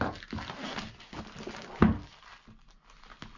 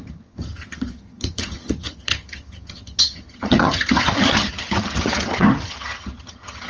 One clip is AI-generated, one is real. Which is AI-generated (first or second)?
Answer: second